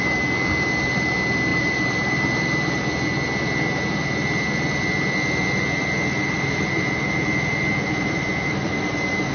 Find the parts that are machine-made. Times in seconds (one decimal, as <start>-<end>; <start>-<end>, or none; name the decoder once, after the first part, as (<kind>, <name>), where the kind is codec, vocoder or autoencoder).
1.5-2.2 (vocoder, BigVGAN v2); 6.2-9.3